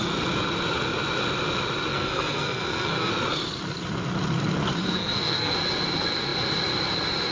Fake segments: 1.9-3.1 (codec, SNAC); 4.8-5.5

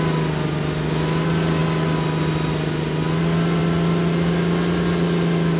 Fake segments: none

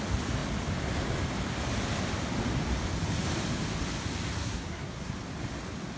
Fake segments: 4.4-5.1 (codec, SNAC)

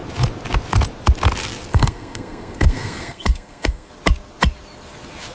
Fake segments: 1.7-3.9 (codec, SNAC)

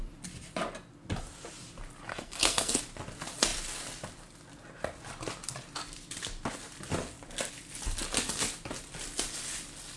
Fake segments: 2.1-2.8 (codec, SNAC)